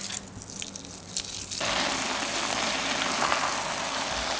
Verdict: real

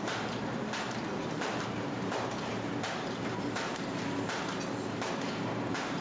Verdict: fake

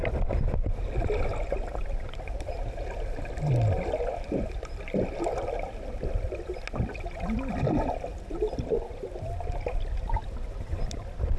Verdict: real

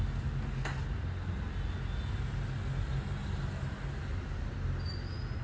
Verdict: real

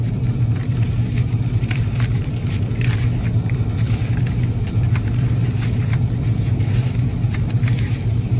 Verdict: fake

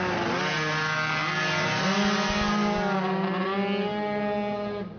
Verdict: real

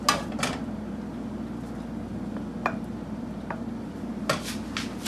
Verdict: real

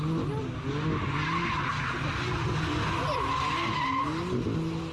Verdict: real